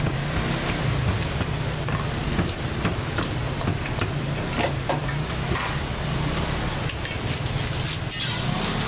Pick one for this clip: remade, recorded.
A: recorded